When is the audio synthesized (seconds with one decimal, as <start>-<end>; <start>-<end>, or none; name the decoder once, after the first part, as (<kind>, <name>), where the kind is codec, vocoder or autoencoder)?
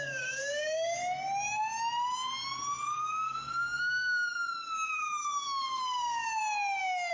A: 0.0-1.0 (codec, DAC); 3.0-6.4